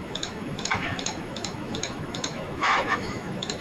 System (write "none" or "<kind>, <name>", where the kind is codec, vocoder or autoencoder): autoencoder, DAC-VAE